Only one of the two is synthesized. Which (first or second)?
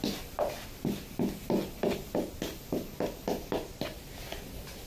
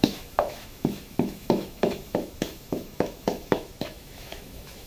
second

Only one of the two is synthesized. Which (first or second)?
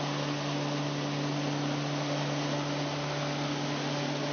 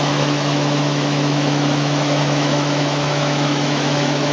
second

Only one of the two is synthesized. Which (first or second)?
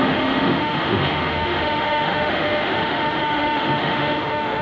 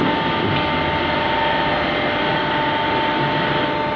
first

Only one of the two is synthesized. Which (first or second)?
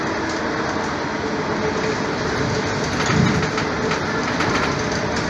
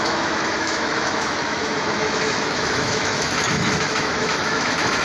second